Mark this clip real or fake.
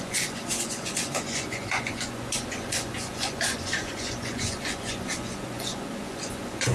fake